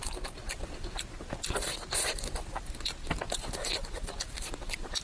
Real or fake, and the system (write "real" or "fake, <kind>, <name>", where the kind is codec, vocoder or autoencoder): real